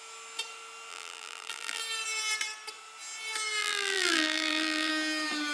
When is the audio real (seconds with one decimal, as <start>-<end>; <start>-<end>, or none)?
0.0-0.9; 1.8-3.6; 4.9-5.5